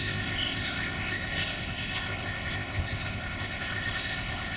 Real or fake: fake